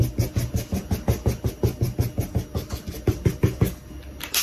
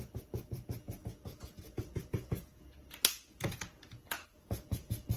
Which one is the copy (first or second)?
second